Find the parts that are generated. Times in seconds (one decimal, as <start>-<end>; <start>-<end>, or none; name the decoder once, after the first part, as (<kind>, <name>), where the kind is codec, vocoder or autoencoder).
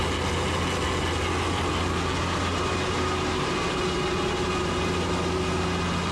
none